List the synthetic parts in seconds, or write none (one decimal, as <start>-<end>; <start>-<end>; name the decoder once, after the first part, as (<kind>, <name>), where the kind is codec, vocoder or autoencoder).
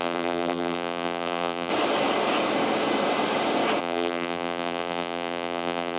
0.0-1.7 (vocoder, BigVGAN v2); 3.8-6.0